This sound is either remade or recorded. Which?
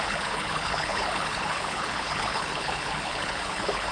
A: remade